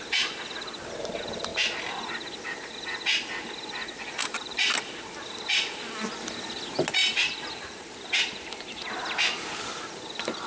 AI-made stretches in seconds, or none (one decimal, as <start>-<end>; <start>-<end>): 4.2-4.9; 7.0-8.9